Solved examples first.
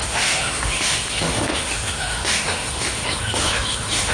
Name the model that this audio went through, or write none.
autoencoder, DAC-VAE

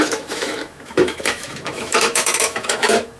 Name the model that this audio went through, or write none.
autoencoder, DAC-VAE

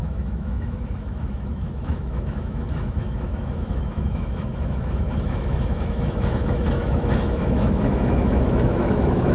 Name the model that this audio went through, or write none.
autoencoder, DAC-VAE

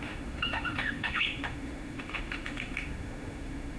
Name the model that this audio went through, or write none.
autoencoder, DAC-VAE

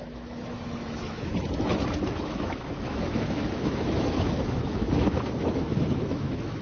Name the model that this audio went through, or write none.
autoencoder, DAC-VAE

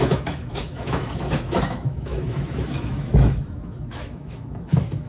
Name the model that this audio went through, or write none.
autoencoder, DAC-VAE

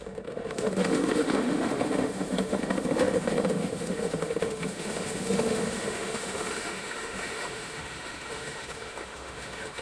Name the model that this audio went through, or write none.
autoencoder, DAC-VAE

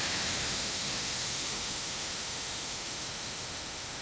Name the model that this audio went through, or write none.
autoencoder, DAC-VAE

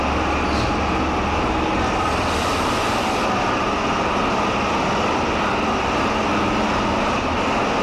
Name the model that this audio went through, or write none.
none